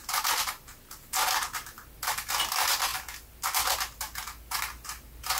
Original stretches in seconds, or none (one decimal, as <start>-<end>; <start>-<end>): 0.0-5.4